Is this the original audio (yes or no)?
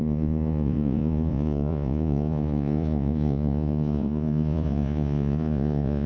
no